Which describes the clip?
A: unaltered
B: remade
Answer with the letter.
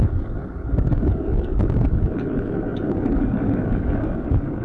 B